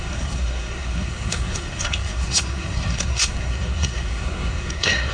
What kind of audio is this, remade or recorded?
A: remade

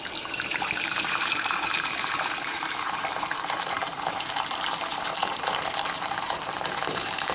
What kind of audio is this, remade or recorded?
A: remade